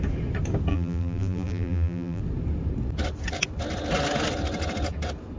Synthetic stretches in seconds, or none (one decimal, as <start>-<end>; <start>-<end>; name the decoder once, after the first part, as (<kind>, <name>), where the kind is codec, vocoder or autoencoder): 0.7-2.2 (vocoder, BigVGAN v2)